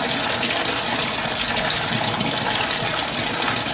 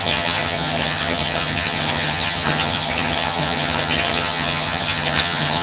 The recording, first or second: first